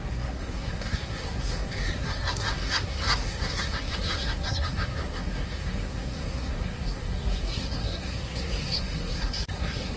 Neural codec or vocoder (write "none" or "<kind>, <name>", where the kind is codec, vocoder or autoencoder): codec, SNAC